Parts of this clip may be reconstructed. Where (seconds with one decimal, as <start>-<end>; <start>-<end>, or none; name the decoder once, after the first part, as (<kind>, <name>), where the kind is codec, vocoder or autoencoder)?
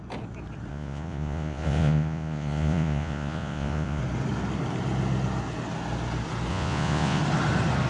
0.7-4.0 (vocoder, Vocos); 6.5-7.2